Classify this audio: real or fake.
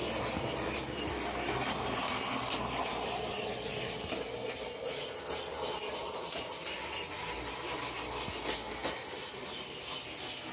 real